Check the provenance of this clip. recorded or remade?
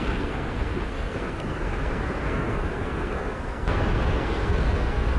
remade